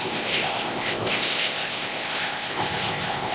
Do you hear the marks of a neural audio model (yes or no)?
yes